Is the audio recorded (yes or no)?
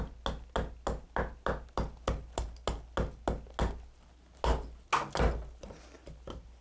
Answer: yes